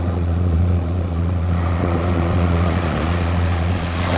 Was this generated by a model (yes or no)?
yes